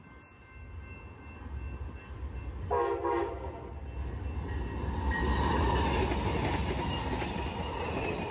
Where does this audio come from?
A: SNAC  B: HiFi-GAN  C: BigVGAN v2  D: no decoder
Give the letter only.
D